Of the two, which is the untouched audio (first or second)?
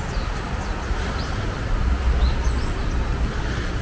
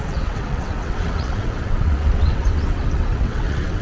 first